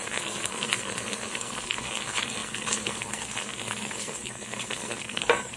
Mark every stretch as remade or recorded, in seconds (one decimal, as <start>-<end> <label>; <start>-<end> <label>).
0.0-5.6 remade